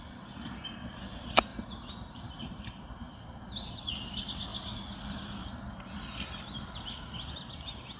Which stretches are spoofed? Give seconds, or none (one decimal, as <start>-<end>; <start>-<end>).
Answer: 1.5-3.8